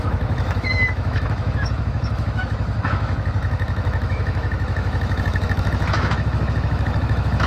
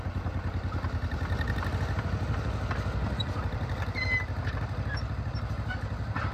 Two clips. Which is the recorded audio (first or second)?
second